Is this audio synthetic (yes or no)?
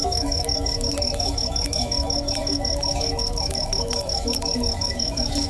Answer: yes